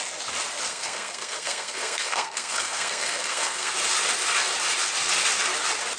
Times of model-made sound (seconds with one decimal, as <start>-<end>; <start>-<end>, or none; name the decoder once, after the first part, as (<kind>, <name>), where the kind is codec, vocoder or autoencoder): 0.7-3.7 (codec, SNAC)

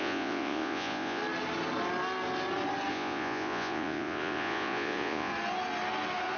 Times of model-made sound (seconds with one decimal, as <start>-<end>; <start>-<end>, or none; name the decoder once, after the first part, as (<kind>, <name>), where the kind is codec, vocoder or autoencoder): 0.0-1.2 (vocoder, Vocos); 2.9-5.3

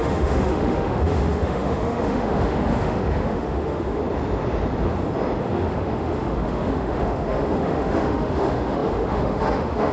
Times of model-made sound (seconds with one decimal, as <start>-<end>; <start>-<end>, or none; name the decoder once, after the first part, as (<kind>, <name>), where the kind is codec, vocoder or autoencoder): 0.0-4.0 (autoencoder, DAC-VAE); 5.4-9.9

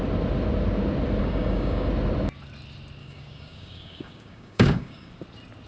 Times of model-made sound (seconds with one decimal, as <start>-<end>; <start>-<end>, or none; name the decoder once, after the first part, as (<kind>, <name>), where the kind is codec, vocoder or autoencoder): 1.2-1.9 (codec, DAC); 3.0-5.1

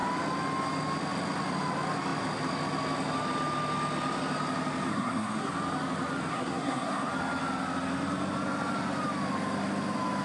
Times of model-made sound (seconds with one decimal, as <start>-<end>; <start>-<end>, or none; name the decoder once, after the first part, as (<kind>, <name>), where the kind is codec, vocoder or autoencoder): 4.9-5.5 (codec, SNAC); 6.3-7.1

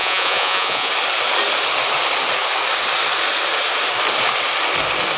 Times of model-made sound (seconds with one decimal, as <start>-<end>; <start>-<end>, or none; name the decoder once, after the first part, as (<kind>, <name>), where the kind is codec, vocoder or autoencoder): 0.0-0.9 (vocoder, Vocos)

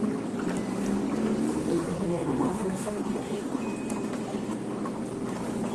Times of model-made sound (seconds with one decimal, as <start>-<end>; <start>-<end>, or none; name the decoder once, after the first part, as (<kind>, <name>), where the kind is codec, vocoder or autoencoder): 1.7-3.6 (codec, SNAC)

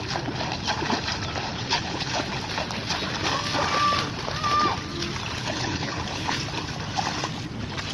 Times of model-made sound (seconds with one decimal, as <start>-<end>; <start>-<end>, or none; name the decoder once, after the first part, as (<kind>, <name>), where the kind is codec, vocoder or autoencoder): 1.5-2.3 (codec, HILCodec); 5.4-6.4